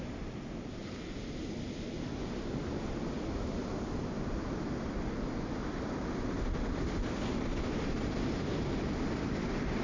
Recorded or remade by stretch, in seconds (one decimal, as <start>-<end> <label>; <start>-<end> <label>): 0.0-9.8 recorded